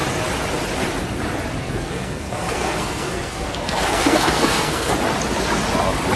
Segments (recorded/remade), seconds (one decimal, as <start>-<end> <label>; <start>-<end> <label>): 0.0-1.6 recorded; 1.6-4.9 remade; 4.9-6.2 recorded